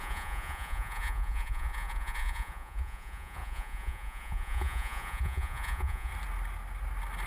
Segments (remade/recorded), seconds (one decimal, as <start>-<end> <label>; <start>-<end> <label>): 0.0-6.1 remade; 6.1-7.3 recorded